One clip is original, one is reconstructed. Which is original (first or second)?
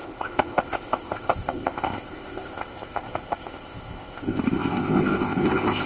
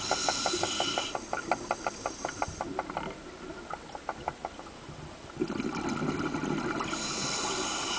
second